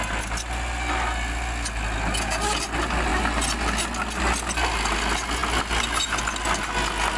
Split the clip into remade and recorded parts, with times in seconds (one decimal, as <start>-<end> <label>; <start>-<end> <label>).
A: 0.0-7.2 recorded

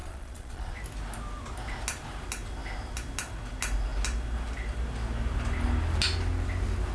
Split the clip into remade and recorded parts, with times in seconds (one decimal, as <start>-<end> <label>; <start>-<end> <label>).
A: 0.0-0.8 remade; 0.8-6.9 recorded

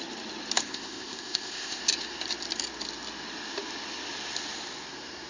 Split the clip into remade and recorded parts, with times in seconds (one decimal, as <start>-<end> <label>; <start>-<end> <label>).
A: 0.0-0.6 recorded; 0.6-1.8 remade; 1.8-5.3 recorded

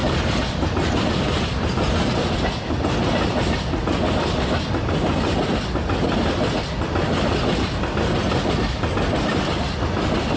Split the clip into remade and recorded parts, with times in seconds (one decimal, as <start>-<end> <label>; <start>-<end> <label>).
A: 0.0-10.4 recorded

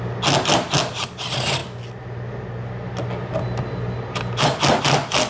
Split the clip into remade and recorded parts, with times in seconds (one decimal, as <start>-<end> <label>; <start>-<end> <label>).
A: 0.0-5.3 recorded

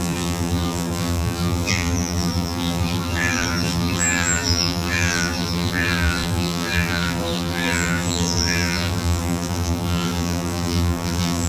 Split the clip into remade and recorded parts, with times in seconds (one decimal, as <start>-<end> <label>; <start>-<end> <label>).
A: 0.0-11.5 remade

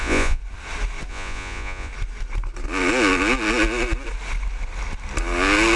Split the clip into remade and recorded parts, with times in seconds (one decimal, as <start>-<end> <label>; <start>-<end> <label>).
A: 0.0-0.4 remade; 0.4-1.1 recorded; 1.1-1.9 remade; 1.9-5.8 recorded